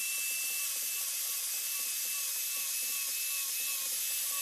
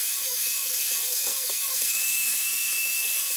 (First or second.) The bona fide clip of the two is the first